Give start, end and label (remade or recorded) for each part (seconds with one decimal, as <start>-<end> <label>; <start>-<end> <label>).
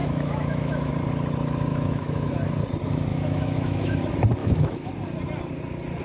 0.0-0.9 remade; 0.9-1.7 recorded; 1.7-2.3 remade; 2.3-3.1 recorded; 3.1-4.0 remade; 4.0-4.4 recorded; 4.4-4.9 remade; 4.9-6.0 recorded